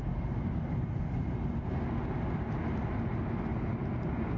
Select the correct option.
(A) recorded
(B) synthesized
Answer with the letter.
A